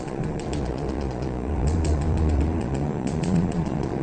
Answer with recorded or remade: remade